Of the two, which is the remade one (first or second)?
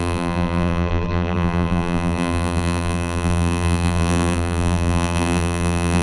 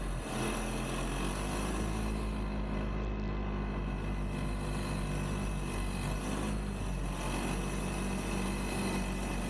first